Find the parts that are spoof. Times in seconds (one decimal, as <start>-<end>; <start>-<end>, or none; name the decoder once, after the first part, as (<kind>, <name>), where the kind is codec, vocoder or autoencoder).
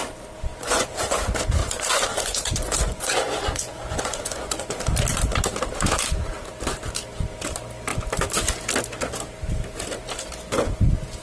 0.5-1.2 (vocoder, Vocos); 1.6-4.8